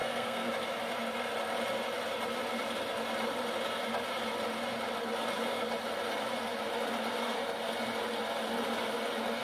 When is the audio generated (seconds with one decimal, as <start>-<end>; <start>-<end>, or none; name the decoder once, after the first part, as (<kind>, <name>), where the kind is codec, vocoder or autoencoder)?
0.0-0.5 (codec, SNAC)